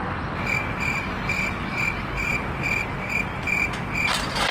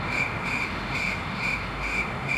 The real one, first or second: first